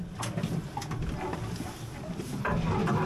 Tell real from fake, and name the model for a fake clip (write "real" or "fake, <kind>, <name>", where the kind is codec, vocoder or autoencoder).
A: real